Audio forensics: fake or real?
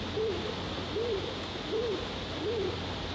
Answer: real